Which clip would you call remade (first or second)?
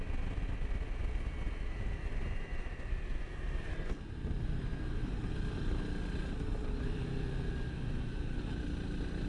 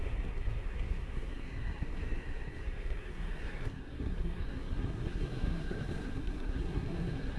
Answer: second